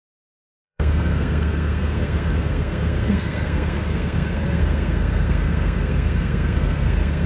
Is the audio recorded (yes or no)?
no